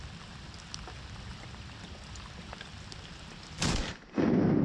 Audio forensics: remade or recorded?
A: recorded